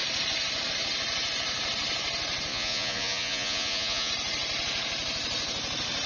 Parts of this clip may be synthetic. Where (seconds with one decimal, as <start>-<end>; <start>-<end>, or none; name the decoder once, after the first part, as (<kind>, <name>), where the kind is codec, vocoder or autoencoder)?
2.5-4.1 (vocoder, Vocos)